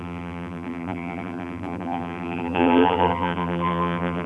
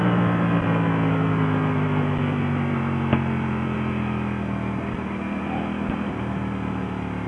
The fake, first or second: first